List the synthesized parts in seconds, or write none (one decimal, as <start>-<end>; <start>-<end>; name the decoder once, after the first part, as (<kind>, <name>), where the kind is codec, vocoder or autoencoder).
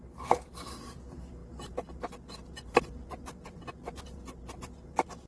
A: none